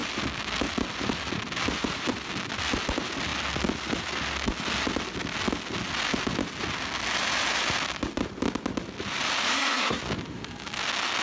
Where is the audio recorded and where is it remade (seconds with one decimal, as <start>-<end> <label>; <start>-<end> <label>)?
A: 0.0-9.5 recorded; 9.5-10.0 remade; 10.0-11.2 recorded